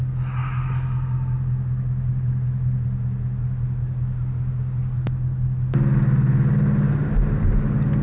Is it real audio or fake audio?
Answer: real